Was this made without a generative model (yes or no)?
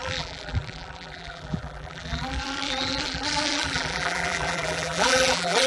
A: no